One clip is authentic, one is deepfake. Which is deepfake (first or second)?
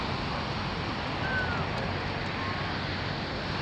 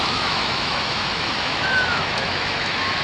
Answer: second